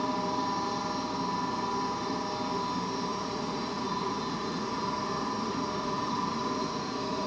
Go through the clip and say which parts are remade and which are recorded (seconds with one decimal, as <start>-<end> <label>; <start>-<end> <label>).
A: 0.0-3.1 recorded; 3.1-7.3 remade